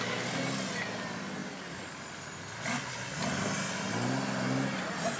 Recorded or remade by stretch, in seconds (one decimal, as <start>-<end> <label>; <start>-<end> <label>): 0.0-5.2 recorded